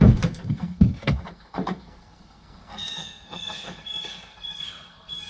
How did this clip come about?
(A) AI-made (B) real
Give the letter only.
A